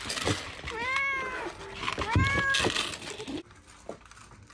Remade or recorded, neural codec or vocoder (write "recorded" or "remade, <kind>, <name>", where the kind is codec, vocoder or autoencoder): recorded